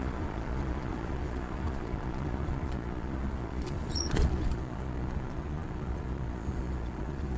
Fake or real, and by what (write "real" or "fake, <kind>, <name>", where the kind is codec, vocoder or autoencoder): fake, vocoder, Vocos